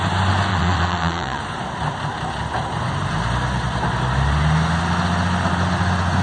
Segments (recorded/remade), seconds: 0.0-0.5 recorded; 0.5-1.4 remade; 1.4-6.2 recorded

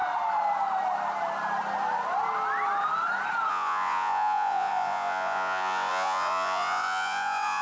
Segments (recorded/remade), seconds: 0.0-3.5 recorded; 3.5-7.6 remade

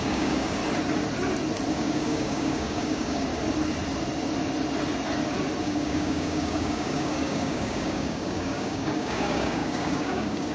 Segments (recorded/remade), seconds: 0.0-0.6 remade; 0.6-1.7 recorded; 1.7-3.3 remade; 3.3-5.6 recorded; 5.6-10.5 remade

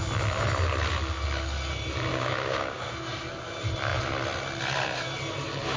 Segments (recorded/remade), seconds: 0.0-2.1 recorded; 2.1-2.9 remade; 2.9-5.8 recorded

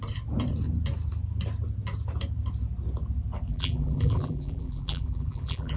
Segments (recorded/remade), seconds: 0.0-3.5 recorded; 3.5-5.8 remade

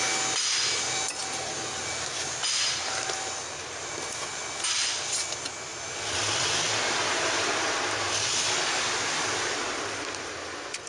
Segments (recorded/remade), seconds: 0.0-10.9 recorded

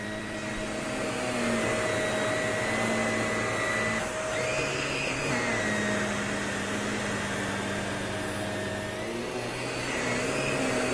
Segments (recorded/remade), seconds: 0.0-1.1 remade; 1.1-10.9 recorded